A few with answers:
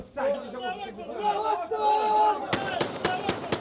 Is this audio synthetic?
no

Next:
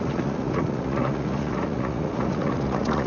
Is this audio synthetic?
yes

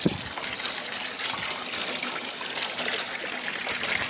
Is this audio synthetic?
no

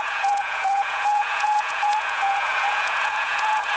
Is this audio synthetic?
yes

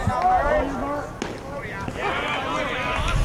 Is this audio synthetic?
no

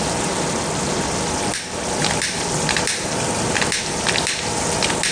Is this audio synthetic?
no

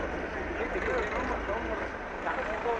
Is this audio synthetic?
no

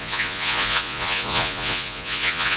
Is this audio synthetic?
yes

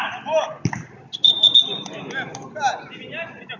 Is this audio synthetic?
no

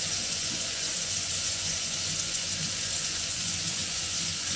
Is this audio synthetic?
yes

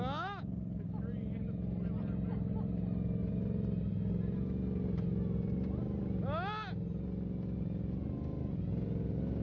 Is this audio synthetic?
no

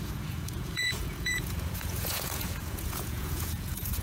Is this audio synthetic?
yes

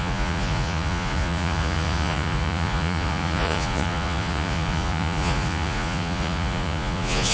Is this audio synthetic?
yes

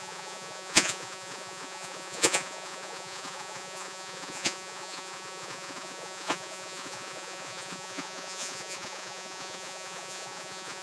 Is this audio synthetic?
yes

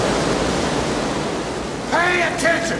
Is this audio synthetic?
no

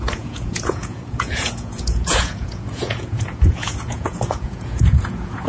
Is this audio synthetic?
yes